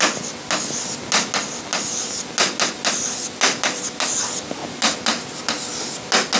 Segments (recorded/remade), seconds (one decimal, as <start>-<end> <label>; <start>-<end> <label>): 0.0-6.4 recorded